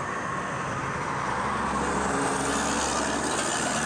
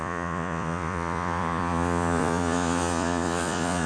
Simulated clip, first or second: second